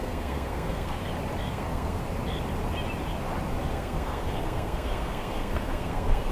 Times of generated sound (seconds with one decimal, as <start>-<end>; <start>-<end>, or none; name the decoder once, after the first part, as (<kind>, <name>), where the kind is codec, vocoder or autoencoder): 0.0-1.0 (codec, SNAC); 1.5-2.0; 3.7-6.3